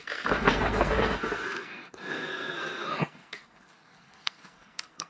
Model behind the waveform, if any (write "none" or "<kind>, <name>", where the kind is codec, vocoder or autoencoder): codec, SNAC